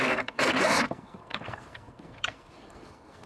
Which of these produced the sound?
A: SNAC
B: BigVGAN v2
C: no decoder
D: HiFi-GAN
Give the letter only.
A